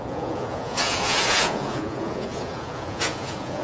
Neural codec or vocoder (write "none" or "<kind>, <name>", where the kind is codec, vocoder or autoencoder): vocoder, Vocos